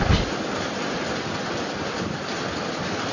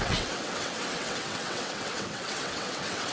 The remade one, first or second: second